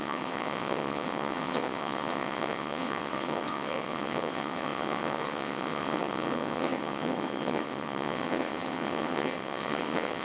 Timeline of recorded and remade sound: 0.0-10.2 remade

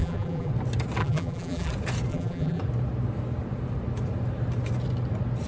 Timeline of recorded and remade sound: 0.0-0.5 remade; 0.5-1.0 recorded; 1.0-1.7 remade; 1.7-2.1 recorded; 2.1-2.6 remade; 2.6-5.5 recorded

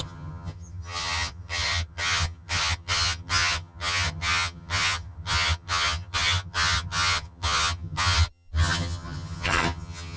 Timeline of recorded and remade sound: 0.0-10.2 remade